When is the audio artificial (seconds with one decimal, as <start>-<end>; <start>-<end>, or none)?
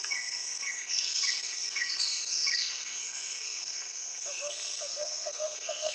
0.0-5.9